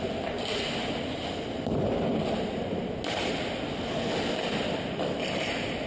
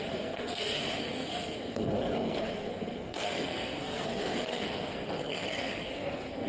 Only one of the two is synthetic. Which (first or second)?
second